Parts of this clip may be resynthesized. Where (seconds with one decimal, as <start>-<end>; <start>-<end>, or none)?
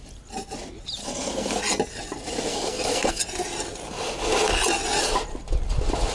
1.0-1.6; 2.5-3.2